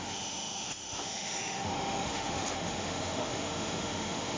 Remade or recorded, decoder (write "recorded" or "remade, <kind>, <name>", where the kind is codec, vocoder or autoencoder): remade, autoencoder, DAC-VAE